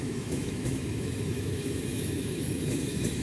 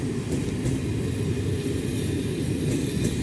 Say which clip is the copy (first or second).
first